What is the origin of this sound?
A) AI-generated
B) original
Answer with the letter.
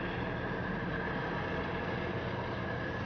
B